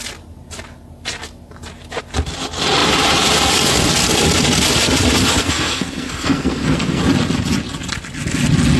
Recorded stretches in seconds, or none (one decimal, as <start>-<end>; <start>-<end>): 0.0-5.4; 7.0-8.8

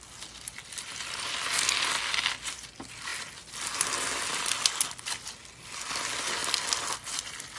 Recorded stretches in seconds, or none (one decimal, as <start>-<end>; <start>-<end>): 0.0-7.6